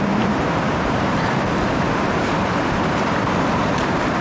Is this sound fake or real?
fake